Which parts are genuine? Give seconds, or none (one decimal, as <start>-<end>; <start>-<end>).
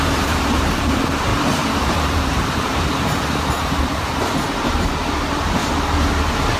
5.6-6.6